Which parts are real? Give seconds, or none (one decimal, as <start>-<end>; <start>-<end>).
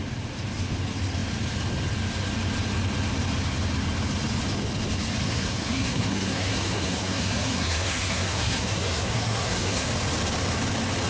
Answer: 0.0-5.2; 9.9-11.1